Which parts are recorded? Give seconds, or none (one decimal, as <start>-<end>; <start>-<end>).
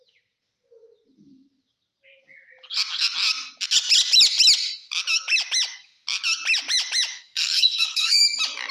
0.0-7.1; 8.2-8.7